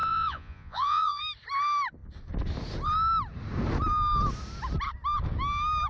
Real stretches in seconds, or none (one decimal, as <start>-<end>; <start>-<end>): 1.2-5.9